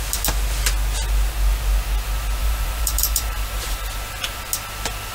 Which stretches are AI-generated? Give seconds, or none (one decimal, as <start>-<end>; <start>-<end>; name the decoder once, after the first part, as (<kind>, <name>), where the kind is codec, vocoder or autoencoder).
2.4-3.8 (vocoder, BigVGAN v2)